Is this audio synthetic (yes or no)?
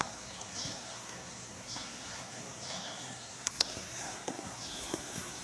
yes